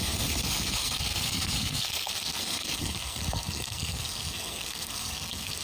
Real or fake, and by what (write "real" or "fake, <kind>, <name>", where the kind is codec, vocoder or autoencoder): fake, codec, SNAC